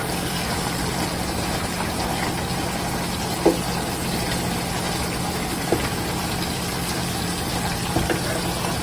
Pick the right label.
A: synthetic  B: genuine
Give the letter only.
B